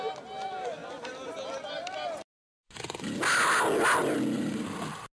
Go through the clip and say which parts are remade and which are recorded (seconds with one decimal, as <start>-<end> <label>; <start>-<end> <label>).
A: 0.0-5.2 recorded